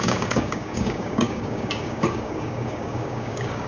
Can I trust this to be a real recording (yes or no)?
no